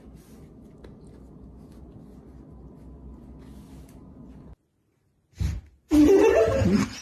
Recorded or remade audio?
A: recorded